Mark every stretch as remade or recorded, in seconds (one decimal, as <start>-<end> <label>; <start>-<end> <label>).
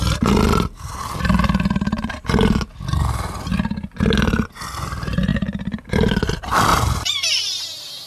0.0-8.1 recorded